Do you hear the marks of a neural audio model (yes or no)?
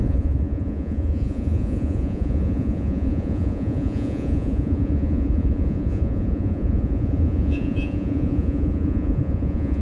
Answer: yes